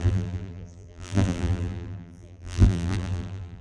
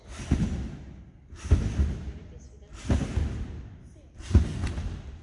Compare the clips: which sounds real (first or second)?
second